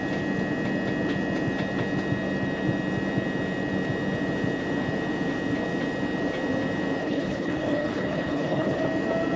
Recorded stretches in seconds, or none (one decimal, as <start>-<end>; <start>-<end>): 0.0-7.0; 8.8-9.4